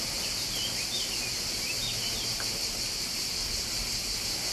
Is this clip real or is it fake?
real